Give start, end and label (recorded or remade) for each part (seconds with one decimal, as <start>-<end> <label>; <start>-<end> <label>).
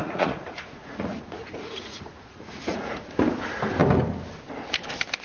0.0-3.1 remade; 3.1-5.2 recorded